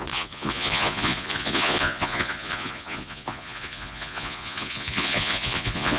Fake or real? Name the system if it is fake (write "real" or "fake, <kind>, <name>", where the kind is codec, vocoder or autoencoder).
fake, vocoder, Vocos